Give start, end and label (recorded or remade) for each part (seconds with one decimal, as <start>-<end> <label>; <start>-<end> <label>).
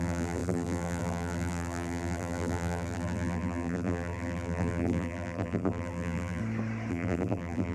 0.0-6.4 remade; 6.4-6.9 recorded; 6.9-7.7 remade